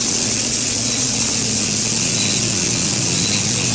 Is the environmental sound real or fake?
fake